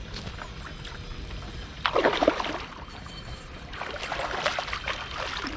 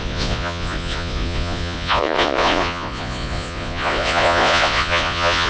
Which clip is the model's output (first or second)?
second